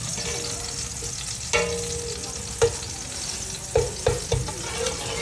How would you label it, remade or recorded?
recorded